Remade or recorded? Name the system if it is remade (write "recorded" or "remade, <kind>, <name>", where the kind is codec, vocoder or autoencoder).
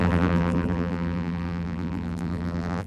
remade, vocoder, BigVGAN v2